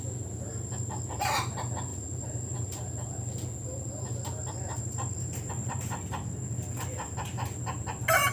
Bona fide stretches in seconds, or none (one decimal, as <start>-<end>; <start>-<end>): 0.0-8.3